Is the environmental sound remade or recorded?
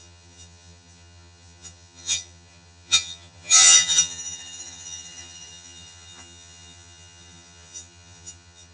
remade